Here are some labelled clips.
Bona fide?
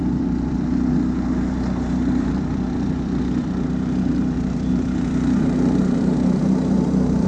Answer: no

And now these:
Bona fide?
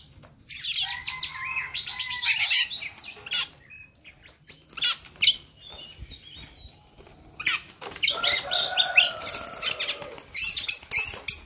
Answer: yes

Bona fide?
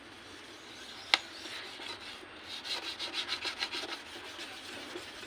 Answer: yes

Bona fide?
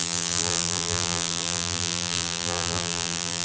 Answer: no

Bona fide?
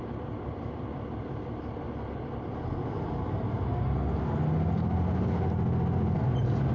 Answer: yes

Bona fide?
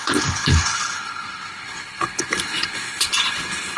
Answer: no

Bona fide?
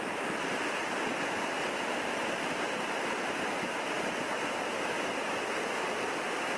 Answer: yes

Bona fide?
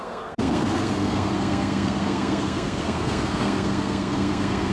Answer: no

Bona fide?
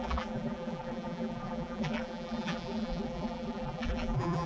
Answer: no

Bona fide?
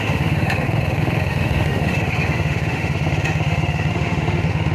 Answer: no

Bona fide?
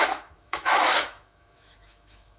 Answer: no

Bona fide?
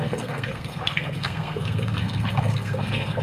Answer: no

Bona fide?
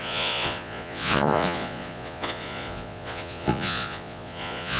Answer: no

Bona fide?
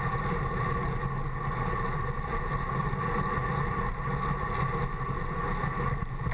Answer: yes